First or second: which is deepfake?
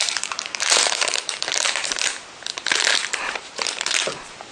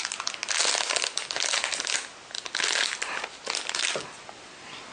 first